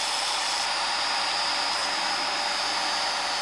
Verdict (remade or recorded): remade